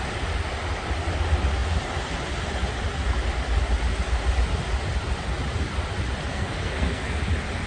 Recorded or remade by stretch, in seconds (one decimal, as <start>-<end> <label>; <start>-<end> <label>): 0.0-6.3 recorded; 6.3-7.2 remade; 7.2-7.7 recorded